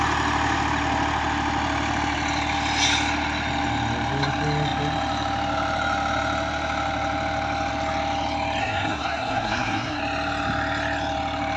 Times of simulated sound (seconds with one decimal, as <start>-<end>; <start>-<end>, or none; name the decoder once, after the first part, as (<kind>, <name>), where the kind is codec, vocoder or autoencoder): 8.6-10.0 (codec, SNAC)